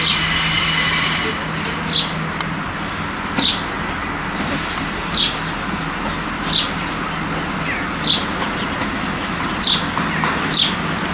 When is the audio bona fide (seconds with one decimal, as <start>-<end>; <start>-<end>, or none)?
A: 0.0-8.8; 9.4-11.1